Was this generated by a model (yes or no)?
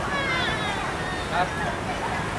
no